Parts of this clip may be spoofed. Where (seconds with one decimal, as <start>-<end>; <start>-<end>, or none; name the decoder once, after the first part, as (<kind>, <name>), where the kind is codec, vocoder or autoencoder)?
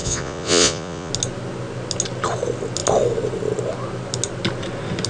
0.0-1.1 (vocoder, Vocos)